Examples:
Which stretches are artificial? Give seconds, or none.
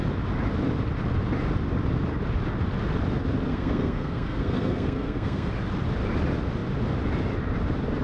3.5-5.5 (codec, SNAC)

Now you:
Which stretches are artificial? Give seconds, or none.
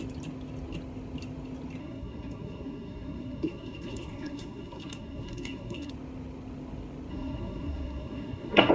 1.8-5.9 (codec, SNAC); 7.1-8.7